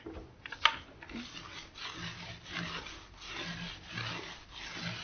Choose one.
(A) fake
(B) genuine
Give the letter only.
B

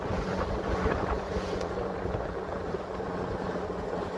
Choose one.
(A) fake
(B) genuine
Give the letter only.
A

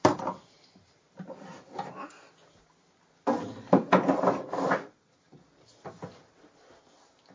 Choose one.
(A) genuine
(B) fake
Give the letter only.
A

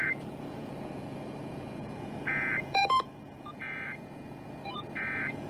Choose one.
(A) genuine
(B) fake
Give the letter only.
B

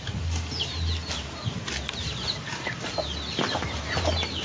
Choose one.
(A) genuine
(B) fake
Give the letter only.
A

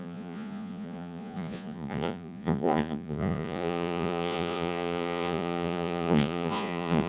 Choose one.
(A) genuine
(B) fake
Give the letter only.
B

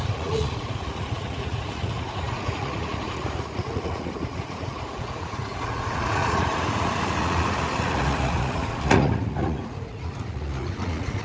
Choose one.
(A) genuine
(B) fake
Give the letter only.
B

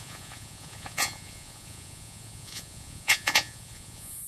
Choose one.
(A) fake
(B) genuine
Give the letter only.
A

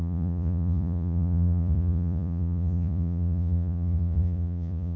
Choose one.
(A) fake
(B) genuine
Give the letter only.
A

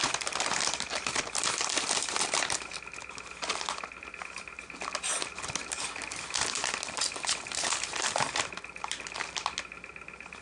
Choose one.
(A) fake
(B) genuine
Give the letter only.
B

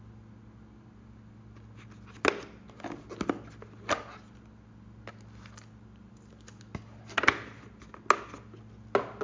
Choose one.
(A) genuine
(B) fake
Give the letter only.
A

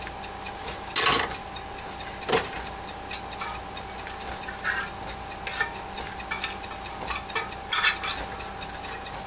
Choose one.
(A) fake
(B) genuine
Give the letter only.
B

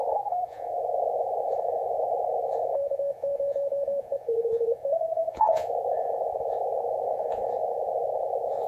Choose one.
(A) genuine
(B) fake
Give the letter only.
B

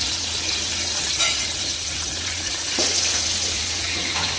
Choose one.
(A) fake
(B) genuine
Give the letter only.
A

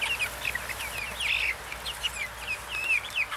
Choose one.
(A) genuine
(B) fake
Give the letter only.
A